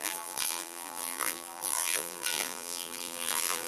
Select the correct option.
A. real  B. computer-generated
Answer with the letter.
B